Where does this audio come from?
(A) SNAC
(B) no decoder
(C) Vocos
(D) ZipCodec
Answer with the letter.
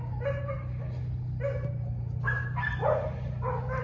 B